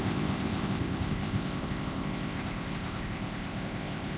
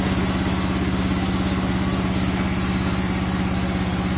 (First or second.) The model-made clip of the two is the first